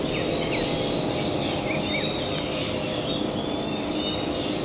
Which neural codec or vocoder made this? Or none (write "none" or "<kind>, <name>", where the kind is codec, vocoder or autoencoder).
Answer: none